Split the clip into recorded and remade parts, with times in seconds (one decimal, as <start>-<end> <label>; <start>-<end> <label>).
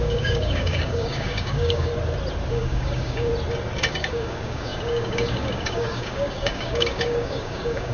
0.0-1.9 remade; 1.9-2.5 recorded; 2.5-3.3 remade; 3.3-3.9 recorded; 3.9-7.9 remade